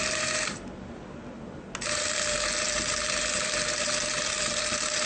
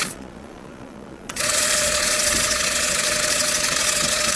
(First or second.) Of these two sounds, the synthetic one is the second